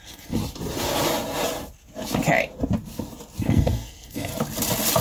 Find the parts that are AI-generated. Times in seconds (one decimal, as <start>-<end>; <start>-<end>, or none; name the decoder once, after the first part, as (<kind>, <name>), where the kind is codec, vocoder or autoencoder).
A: 0.0-0.4 (codec, SNAC); 3.4-4.3